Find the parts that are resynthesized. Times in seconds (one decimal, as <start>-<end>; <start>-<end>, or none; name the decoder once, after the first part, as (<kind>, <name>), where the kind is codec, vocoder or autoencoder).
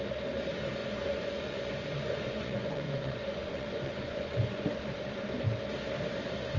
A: 0.8-4.7 (vocoder, Vocos)